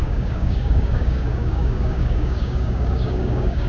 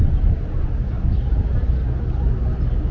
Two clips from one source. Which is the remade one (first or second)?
first